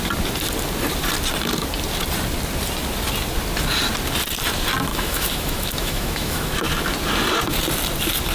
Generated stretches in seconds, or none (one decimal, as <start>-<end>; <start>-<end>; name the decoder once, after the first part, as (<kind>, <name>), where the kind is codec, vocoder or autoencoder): 4.9-6.5 (autoencoder, DAC-VAE)